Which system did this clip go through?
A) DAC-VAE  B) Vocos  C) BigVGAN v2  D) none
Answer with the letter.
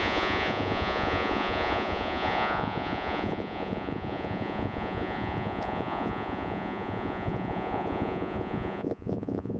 B